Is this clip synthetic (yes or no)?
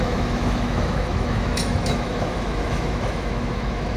yes